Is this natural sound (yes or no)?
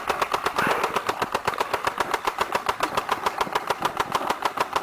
yes